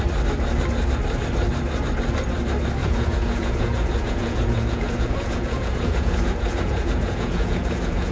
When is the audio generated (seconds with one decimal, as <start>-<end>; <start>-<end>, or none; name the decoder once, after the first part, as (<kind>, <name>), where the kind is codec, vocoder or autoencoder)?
2.8-8.1 (vocoder, Vocos)